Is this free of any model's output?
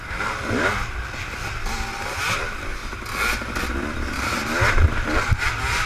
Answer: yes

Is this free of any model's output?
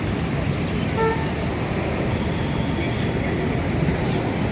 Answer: yes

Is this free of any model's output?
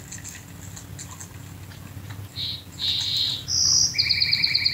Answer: yes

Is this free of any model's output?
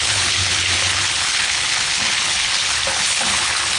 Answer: no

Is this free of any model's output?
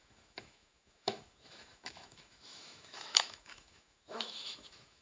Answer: no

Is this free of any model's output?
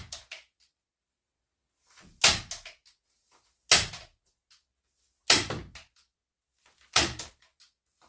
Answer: yes